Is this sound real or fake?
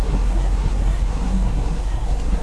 fake